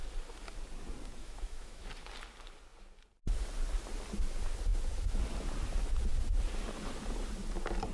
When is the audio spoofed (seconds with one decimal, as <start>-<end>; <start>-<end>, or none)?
1.2-1.9